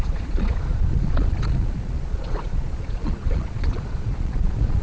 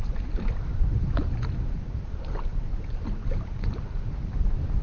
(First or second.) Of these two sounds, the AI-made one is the first